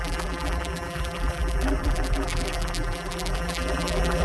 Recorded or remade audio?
remade